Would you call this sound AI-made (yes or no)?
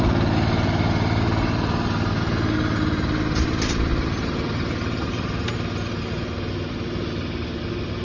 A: no